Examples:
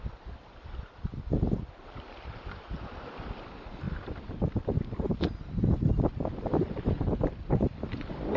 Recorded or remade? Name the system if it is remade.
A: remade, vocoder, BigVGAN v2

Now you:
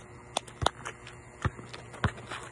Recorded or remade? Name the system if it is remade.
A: recorded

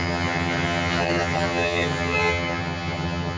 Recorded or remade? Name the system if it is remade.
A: remade, vocoder, HiFi-GAN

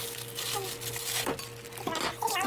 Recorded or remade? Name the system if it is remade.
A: recorded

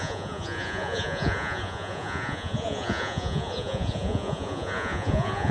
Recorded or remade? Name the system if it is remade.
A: remade, vocoder, Vocos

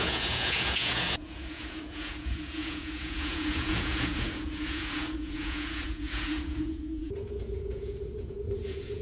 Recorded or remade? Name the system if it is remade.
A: remade, vocoder, Vocos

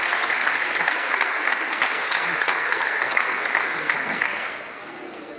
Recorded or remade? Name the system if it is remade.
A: remade, codec, SNAC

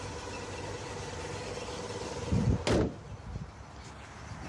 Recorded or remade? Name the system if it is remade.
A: recorded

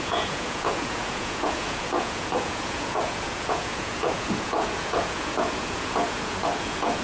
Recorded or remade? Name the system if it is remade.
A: remade, vocoder, Vocos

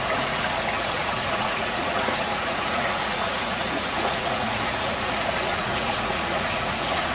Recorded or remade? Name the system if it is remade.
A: remade, vocoder, Vocos